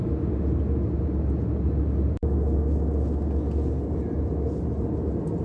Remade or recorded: recorded